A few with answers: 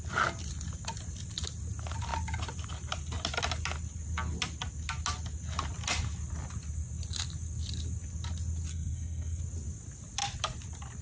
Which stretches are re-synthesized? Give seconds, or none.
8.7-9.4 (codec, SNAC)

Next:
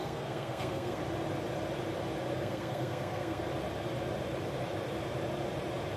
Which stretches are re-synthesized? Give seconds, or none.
0.0-1.0 (codec, SNAC); 2.3-3.4

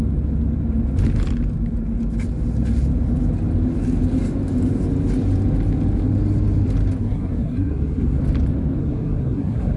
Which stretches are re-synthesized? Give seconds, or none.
7.0-8.2 (codec, SNAC); 8.8-9.8